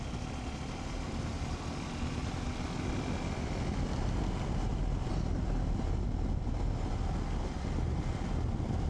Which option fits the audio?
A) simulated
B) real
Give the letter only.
B